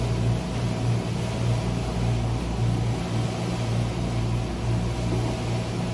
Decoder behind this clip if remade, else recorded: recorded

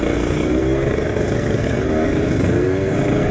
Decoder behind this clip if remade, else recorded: remade, codec, SNAC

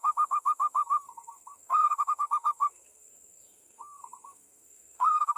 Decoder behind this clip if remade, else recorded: remade, codec, SNAC